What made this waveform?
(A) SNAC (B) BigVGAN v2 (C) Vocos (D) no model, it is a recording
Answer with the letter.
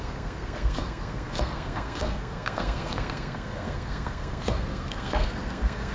A